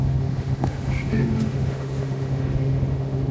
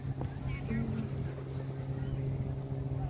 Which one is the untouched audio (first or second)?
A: second